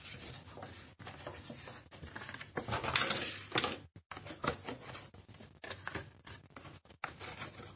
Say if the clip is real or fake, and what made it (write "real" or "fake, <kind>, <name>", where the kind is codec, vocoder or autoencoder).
real